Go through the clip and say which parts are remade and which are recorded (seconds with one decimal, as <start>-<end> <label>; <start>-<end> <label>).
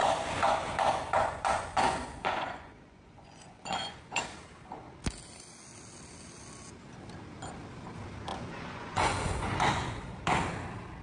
0.0-4.2 remade; 4.2-8.3 recorded; 8.3-10.2 remade; 10.2-11.0 recorded